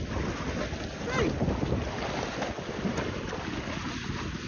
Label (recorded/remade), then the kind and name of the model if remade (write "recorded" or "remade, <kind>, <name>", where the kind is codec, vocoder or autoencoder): recorded